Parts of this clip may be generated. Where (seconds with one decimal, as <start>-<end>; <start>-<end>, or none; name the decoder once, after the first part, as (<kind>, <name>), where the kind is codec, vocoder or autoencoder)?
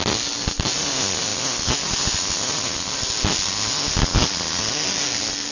none